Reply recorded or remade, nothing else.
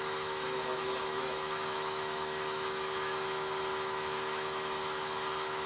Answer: remade